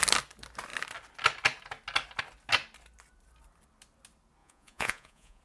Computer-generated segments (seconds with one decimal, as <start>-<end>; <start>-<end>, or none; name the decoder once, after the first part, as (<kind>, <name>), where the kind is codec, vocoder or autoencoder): 4.4-5.4 (vocoder, Vocos)